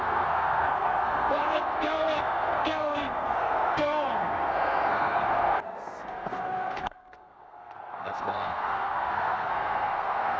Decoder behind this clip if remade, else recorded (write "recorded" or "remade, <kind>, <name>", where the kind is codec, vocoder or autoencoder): remade, codec, SNAC